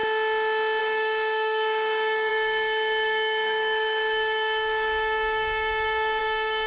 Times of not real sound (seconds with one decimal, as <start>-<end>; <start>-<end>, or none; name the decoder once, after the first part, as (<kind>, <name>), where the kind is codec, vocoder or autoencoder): 0.8-6.7 (codec, DAC)